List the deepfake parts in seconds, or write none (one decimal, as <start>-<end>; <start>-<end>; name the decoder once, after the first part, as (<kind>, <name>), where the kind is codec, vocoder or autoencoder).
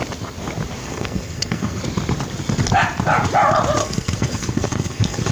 0.8-1.8 (codec, SNAC); 3.8-5.3